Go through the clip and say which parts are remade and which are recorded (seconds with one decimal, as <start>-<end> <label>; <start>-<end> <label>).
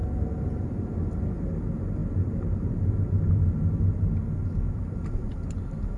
0.0-6.0 recorded